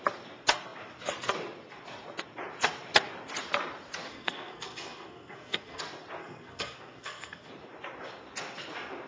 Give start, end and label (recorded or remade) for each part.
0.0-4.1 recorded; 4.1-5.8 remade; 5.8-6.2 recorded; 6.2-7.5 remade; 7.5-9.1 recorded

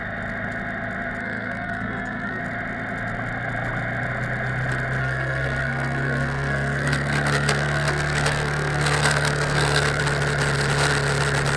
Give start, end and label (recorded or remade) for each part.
0.0-1.2 recorded; 1.2-2.4 remade; 2.4-5.0 recorded; 5.0-10.0 remade; 10.0-11.6 recorded

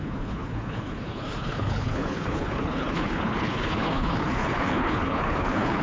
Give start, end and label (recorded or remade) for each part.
0.0-5.8 remade

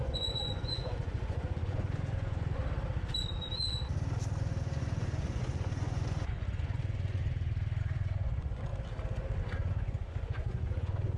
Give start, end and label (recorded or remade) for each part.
0.0-2.6 remade; 2.6-4.4 recorded; 4.4-7.2 remade; 7.2-7.8 recorded; 7.8-8.7 remade; 8.7-9.4 recorded; 9.4-11.2 remade

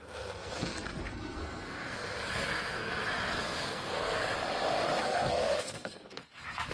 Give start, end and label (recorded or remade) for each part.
0.0-2.9 remade; 2.9-3.4 recorded; 3.4-4.2 remade; 4.2-5.0 recorded; 5.0-6.7 remade

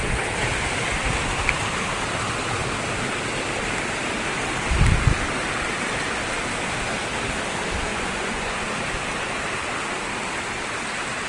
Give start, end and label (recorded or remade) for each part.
0.0-7.9 recorded; 7.9-8.6 remade; 8.6-11.3 recorded

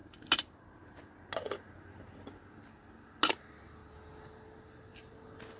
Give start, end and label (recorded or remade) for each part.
0.0-5.6 recorded